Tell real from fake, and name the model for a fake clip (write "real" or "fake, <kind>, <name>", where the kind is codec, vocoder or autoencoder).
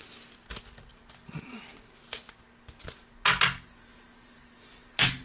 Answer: real